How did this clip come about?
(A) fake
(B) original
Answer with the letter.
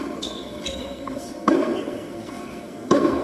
A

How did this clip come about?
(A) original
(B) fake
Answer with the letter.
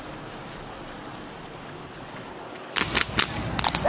A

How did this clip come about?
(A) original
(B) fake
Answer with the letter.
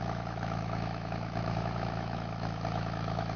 B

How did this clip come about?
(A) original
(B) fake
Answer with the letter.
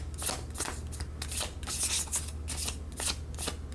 A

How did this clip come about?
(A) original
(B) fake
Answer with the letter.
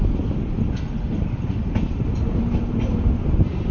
A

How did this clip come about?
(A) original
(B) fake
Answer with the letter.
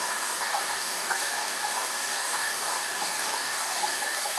B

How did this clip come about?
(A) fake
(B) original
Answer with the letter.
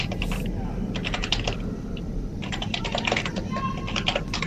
B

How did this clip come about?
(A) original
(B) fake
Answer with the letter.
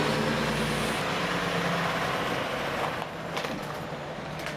A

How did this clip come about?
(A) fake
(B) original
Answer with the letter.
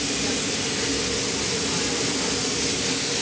B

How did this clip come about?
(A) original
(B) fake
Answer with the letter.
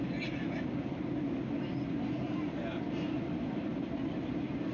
A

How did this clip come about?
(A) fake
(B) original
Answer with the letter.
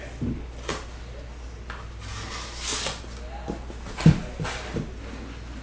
B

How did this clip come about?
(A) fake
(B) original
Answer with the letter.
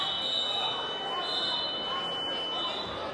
B